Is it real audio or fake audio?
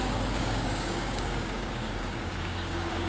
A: fake